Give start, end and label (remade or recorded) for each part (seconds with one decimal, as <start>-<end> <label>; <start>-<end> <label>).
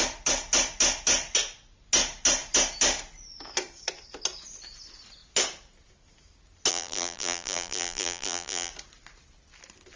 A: 0.0-6.7 recorded; 6.7-8.7 remade; 8.7-10.0 recorded